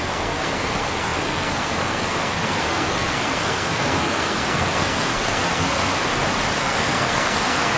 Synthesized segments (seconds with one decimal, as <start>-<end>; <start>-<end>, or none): 0.0-5.9; 6.6-7.8